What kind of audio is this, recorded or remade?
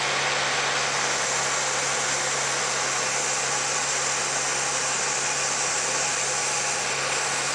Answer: recorded